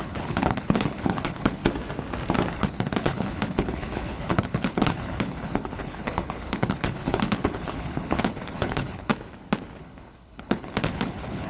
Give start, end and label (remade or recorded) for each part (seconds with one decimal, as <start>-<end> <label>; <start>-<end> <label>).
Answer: 0.0-1.6 remade; 1.6-2.5 recorded; 2.5-9.1 remade; 9.1-9.8 recorded; 9.8-11.5 remade